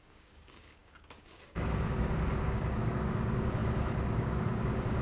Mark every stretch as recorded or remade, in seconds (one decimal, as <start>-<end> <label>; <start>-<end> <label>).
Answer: 0.0-3.6 remade; 3.6-4.1 recorded; 4.1-5.0 remade

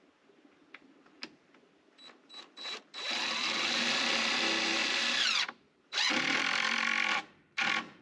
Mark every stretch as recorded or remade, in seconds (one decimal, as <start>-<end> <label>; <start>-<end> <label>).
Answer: 0.0-4.8 recorded; 4.8-8.0 remade

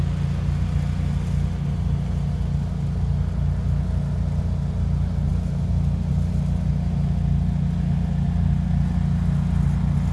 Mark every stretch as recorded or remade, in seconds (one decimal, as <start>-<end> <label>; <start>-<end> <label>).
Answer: 0.0-10.1 recorded

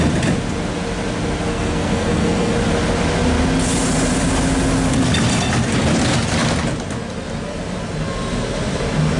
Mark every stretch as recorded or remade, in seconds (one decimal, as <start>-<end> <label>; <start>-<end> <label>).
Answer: 0.0-1.5 recorded; 1.5-2.5 remade; 2.5-9.2 recorded